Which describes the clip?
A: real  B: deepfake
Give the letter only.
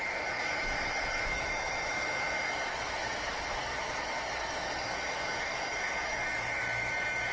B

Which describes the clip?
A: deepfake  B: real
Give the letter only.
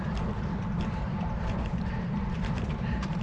A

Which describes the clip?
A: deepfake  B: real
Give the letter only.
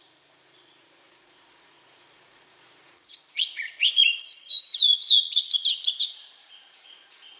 A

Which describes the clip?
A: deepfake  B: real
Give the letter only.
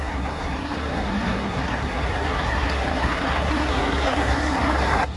A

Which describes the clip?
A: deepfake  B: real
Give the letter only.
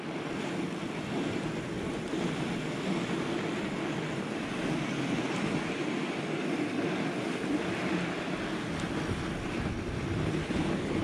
B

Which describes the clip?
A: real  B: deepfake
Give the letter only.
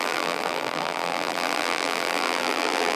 B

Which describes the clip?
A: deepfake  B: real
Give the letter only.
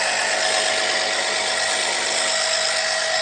B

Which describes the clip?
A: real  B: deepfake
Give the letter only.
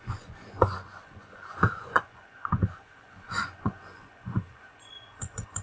B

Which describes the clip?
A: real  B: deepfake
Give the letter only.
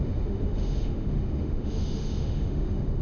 B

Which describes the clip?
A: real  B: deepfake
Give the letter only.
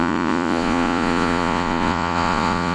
B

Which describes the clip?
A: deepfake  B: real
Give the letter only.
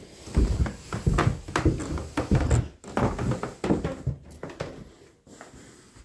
B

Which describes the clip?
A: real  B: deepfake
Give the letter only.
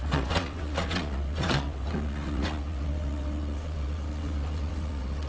B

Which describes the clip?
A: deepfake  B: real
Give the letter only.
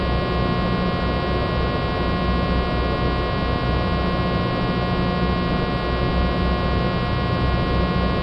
B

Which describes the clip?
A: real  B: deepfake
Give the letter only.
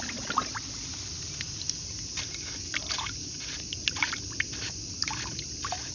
A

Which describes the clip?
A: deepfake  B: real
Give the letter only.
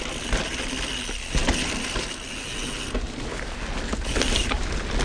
B